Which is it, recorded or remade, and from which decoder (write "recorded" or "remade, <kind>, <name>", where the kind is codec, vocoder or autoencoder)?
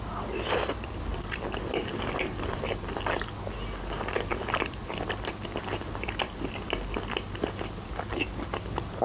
recorded